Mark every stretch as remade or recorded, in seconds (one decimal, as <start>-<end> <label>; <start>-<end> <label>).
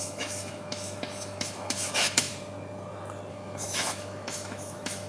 0.0-2.3 remade; 2.3-3.3 recorded; 3.3-5.1 remade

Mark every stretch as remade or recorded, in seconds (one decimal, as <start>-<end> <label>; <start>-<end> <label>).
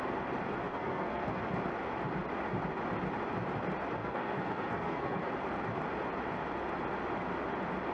0.0-0.6 recorded; 0.6-1.4 remade; 1.4-4.0 recorded; 4.0-5.3 remade; 5.3-7.9 recorded